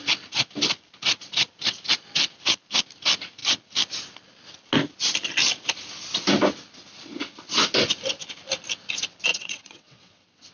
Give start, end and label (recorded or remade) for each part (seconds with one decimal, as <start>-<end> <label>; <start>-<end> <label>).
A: 0.0-9.3 recorded; 9.3-10.5 remade